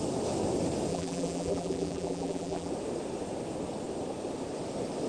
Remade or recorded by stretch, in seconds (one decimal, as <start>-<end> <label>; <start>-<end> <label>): 0.0-0.9 recorded; 0.9-2.7 remade; 2.7-5.1 recorded